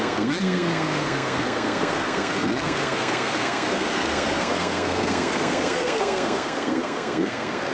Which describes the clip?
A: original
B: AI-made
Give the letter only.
B